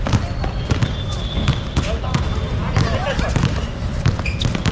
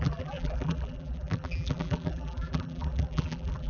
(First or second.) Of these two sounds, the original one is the first